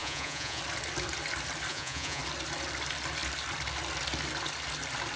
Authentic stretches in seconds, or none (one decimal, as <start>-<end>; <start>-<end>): 0.6-1.7; 2.2-5.2